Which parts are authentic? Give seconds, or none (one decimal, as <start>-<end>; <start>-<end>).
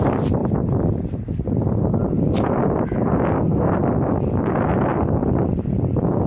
0.0-6.3